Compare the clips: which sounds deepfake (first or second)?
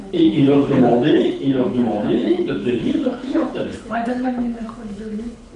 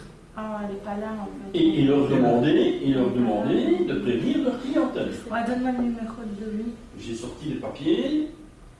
first